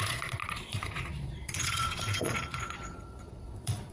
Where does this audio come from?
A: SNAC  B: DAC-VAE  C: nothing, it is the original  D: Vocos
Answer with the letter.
D